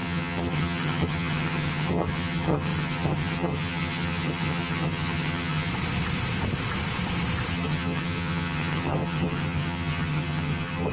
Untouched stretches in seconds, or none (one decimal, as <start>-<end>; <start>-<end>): 5.7-7.5